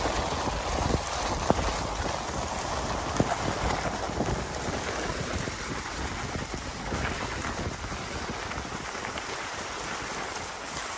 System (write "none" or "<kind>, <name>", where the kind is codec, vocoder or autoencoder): none